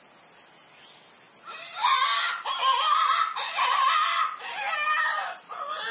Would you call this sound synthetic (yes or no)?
no